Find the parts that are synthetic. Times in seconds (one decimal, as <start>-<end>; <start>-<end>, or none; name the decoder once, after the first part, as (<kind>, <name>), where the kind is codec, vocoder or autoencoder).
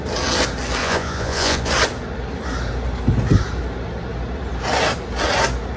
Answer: 0.8-1.7 (vocoder, Vocos)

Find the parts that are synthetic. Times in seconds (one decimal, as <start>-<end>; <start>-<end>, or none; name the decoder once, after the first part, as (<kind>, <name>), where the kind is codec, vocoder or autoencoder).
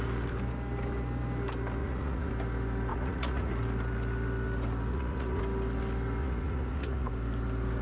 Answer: 1.8-2.3 (vocoder, Vocos); 2.9-3.5; 4.9-5.4; 6.2-7.1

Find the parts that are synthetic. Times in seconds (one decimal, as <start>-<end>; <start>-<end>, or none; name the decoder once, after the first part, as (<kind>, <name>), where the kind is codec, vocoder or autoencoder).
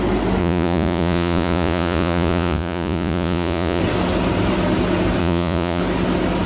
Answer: 0.4-3.8 (vocoder, Vocos); 5.2-5.8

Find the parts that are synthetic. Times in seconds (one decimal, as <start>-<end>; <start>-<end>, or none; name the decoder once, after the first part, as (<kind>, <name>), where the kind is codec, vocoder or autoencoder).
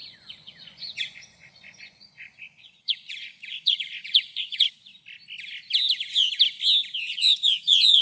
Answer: 0.0-4.9 (vocoder, Vocos); 7.1-8.0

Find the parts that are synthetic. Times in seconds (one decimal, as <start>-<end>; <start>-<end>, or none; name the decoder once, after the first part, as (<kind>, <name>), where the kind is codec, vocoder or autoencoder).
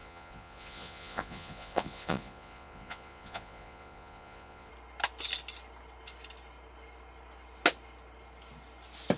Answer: 0.0-4.7 (vocoder, Vocos)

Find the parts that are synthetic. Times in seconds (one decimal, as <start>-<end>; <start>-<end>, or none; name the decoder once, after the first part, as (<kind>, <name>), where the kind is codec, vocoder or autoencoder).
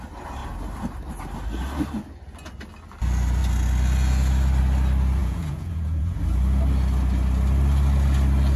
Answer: 5.2-6.2 (vocoder, Vocos)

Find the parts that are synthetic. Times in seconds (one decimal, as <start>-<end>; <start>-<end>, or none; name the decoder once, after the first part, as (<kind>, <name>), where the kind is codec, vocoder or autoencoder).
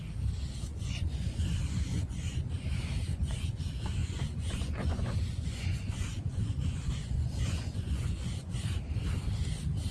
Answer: 0.7-2.5 (vocoder, Vocos); 3.1-3.6; 4.0-8.5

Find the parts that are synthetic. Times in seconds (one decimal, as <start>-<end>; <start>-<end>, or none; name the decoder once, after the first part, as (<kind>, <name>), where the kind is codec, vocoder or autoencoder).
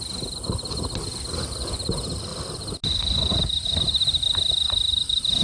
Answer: none